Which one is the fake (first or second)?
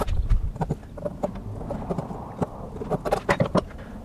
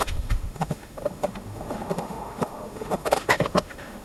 second